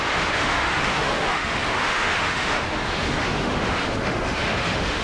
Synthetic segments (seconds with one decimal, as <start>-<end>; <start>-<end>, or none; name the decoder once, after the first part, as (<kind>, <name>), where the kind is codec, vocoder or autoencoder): 0.0-5.0 (autoencoder, DAC-VAE)